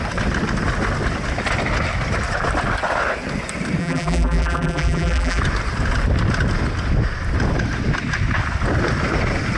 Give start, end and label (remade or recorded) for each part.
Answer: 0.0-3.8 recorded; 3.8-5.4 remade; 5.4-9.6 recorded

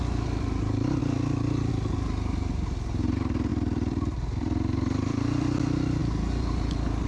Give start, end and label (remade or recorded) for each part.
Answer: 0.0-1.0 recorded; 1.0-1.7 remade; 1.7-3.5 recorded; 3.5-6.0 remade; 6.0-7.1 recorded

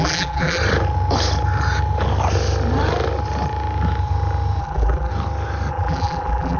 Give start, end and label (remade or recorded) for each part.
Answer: 0.0-0.6 remade; 0.6-4.6 recorded; 4.6-5.1 remade; 5.1-5.7 recorded; 5.7-6.6 remade

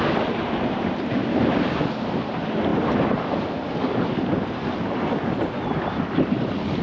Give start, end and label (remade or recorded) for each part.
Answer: 0.0-1.2 recorded; 1.2-1.7 remade; 1.7-6.8 recorded